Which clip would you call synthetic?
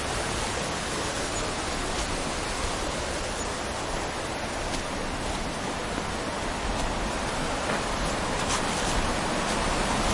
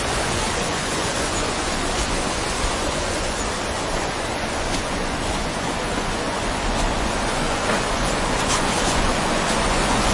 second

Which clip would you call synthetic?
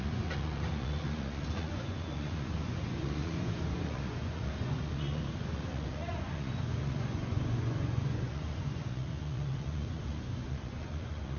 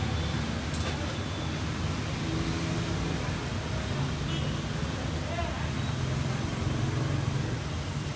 first